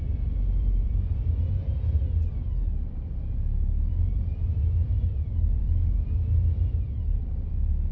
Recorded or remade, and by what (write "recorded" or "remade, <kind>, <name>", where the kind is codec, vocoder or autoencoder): remade, vocoder, BigVGAN v2